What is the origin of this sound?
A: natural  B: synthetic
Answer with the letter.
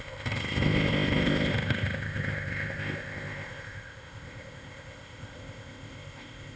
B